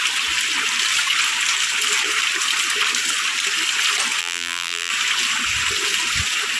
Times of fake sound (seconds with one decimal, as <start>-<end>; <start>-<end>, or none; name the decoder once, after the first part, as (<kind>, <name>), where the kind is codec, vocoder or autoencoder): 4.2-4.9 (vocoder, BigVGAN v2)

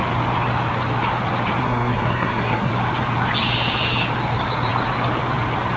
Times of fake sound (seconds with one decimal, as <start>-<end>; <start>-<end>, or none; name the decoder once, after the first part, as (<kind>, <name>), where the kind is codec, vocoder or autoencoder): 1.6-2.7 (codec, SNAC)

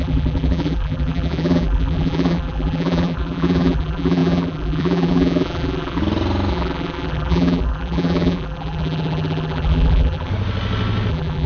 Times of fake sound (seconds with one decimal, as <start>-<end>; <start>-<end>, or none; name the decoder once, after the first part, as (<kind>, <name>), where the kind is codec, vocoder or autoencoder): 0.0-6.0 (vocoder, BigVGAN v2); 6.5-10.3; 11.1-11.5

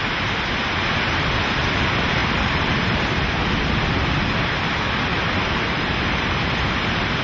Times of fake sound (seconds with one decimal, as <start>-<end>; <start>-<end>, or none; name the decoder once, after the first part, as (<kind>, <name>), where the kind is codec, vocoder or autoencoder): 2.2-3.3 (vocoder, BigVGAN v2); 5.1-6.5